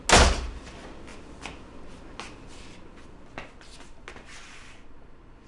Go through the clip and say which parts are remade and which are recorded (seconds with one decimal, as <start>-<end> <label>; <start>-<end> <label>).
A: 0.0-5.5 recorded